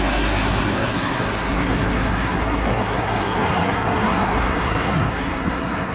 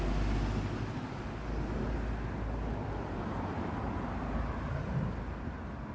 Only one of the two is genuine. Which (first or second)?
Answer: second